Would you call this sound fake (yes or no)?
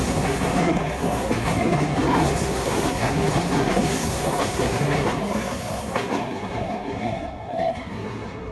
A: yes